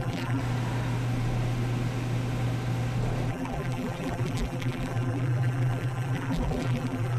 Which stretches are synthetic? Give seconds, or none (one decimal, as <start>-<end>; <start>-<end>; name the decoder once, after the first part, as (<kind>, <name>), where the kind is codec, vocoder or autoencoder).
0.0-0.4 (vocoder, BigVGAN v2); 3.3-7.2